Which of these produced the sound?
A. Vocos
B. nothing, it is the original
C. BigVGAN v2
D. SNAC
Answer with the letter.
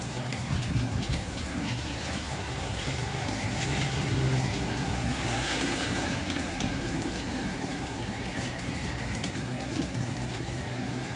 D